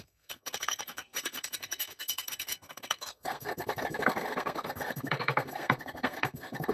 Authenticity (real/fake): fake